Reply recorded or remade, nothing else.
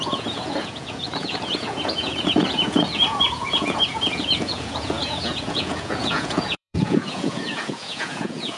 remade